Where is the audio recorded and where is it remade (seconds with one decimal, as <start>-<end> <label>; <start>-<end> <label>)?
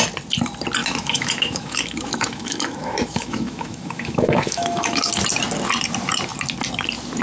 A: 0.0-0.8 recorded; 0.8-5.1 remade; 5.1-7.2 recorded